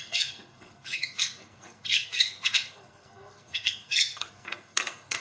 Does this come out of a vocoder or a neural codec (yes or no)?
yes